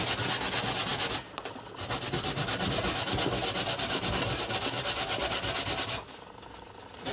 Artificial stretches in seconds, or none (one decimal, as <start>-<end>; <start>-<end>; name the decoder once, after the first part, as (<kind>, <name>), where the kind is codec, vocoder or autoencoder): none